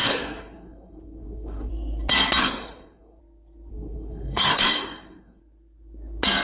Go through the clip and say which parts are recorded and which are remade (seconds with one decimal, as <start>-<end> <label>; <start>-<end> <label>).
0.0-1.7 remade; 1.7-2.4 recorded; 2.4-3.2 remade; 3.2-3.7 recorded; 3.7-5.4 remade; 5.4-6.4 recorded